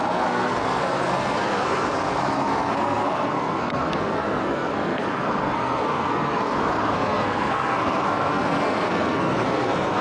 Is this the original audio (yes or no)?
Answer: no